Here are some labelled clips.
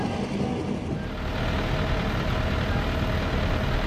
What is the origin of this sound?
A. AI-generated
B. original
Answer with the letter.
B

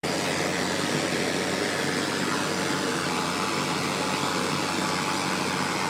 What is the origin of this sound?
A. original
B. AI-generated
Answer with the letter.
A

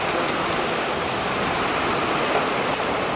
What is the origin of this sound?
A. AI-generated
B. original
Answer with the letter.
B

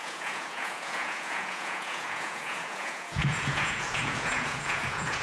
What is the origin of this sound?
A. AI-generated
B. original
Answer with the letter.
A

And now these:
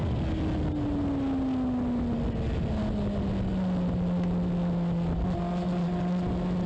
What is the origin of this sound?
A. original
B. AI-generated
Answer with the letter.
A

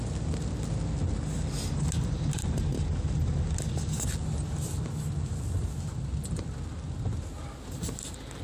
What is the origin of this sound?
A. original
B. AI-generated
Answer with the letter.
A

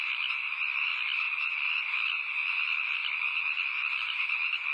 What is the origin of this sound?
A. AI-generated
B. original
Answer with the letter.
B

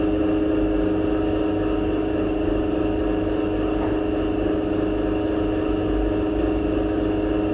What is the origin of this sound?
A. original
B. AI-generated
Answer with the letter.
A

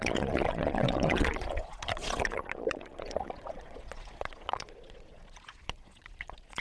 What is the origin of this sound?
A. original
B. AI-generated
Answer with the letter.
B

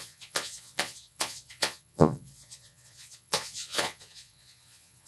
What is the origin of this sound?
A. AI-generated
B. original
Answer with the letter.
A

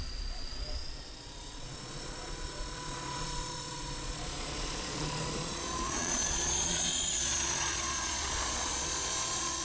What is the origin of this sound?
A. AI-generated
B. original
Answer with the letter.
A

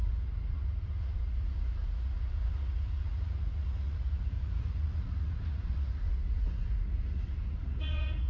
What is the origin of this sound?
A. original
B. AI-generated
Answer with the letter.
B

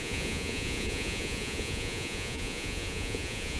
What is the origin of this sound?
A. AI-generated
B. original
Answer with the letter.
A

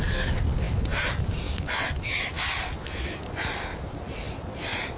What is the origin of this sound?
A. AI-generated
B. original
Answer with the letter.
B